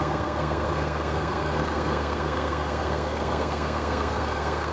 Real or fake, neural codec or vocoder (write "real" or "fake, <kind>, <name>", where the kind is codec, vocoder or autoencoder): fake, codec, SNAC